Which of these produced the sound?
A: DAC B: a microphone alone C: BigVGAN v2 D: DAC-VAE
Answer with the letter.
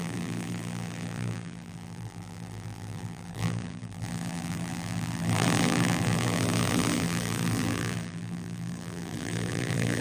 C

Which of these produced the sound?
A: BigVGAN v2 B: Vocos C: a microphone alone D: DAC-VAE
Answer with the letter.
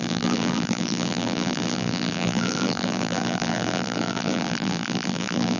A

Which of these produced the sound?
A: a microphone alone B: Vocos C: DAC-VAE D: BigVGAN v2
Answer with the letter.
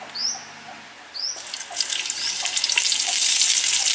A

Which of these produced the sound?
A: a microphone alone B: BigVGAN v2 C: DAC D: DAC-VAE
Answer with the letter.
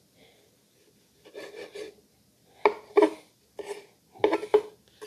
A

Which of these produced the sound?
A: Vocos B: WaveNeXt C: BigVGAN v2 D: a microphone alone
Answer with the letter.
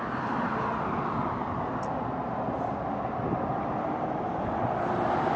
D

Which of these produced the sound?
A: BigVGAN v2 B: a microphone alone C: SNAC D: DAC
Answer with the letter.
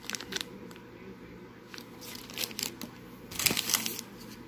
B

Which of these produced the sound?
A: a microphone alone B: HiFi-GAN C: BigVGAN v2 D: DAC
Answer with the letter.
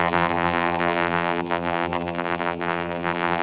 C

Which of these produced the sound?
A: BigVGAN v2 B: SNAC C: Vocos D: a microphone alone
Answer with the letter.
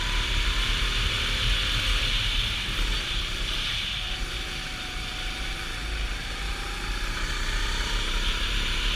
A